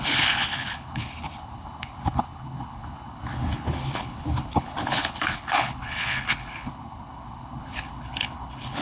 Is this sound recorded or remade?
remade